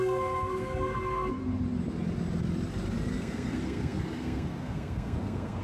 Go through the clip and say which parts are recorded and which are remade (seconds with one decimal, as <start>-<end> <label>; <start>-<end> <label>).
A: 0.0-1.4 remade; 1.4-3.2 recorded; 3.2-5.6 remade